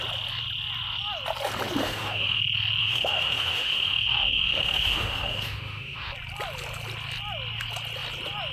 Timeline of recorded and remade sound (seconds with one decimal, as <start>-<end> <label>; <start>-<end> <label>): 0.0-1.8 recorded; 1.8-2.4 remade; 2.4-2.8 recorded; 2.8-6.1 remade; 6.1-8.5 recorded